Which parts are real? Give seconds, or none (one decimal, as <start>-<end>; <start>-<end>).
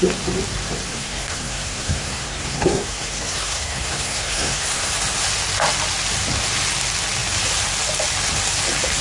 0.0-0.9; 4.9-9.0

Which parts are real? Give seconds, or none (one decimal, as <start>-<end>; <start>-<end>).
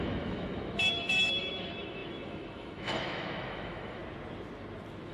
4.0-5.1